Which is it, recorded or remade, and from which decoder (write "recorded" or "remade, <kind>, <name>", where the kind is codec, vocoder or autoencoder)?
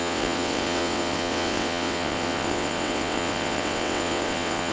remade, vocoder, WaveNeXt